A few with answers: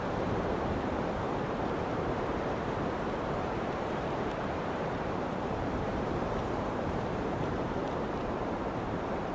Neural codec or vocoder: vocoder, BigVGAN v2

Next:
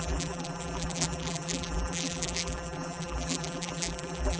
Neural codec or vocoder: vocoder, BigVGAN v2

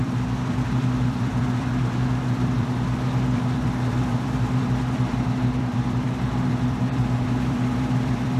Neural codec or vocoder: vocoder, BigVGAN v2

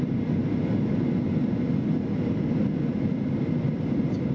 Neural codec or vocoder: none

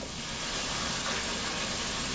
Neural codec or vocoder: none